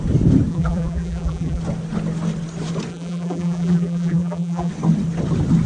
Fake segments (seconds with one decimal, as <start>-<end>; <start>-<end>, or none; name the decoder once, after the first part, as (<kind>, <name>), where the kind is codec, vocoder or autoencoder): 0.5-1.6 (vocoder, BigVGAN v2); 2.9-4.7